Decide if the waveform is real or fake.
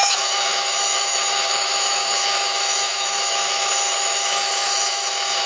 fake